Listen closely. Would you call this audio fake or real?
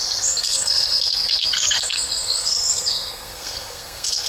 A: fake